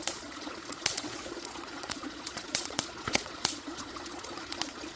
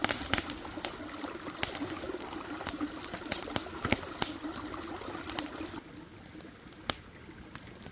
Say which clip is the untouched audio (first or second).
second